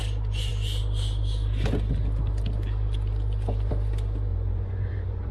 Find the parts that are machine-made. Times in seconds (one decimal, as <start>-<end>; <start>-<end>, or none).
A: 4.3-5.3

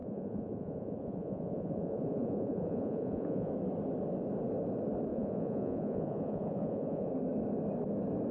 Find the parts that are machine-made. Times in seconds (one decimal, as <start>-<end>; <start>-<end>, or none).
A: 0.0-3.5; 5.1-7.1

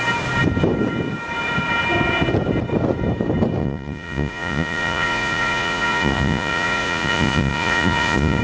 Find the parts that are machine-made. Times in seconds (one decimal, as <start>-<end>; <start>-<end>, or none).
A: 3.6-8.4

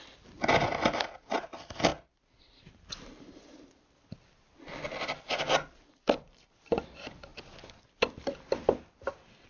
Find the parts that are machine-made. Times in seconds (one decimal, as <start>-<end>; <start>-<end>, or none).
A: none

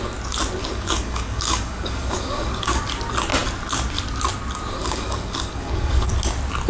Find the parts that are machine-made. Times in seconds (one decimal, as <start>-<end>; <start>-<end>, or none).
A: 0.6-2.8; 4.8-6.1

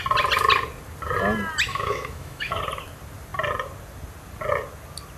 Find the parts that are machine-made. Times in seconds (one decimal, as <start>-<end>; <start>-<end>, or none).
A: 1.7-2.6

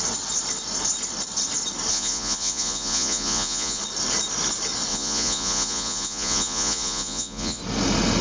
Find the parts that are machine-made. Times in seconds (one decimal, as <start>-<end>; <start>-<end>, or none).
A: 1.9-3.8; 4.9-7.6

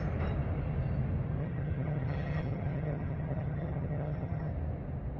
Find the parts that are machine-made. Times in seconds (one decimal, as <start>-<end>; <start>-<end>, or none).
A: 1.4-4.5